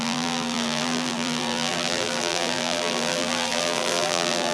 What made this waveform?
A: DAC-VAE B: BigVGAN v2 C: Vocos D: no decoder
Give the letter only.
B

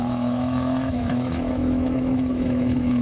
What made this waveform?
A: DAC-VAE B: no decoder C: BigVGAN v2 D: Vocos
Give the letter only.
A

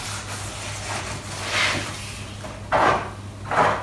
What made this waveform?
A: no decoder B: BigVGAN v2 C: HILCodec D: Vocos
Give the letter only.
A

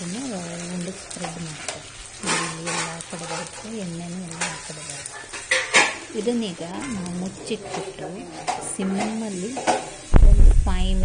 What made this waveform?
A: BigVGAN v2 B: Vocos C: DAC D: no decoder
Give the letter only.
D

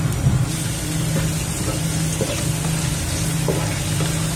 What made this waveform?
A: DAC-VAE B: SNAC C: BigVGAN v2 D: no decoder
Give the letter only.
D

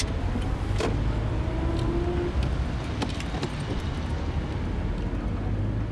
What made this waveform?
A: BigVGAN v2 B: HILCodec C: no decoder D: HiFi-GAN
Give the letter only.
C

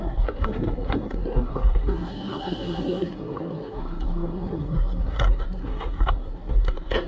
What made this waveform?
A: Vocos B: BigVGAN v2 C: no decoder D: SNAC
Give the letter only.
D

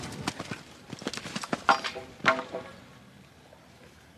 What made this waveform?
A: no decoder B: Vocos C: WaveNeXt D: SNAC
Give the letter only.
A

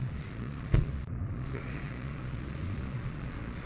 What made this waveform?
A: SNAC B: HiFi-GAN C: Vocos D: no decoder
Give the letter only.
C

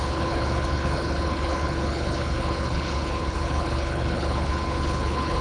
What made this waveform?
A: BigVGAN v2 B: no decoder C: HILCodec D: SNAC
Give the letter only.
C